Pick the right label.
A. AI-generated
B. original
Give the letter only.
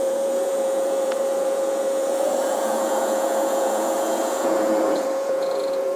A